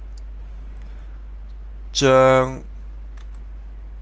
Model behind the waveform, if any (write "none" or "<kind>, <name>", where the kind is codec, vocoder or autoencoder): none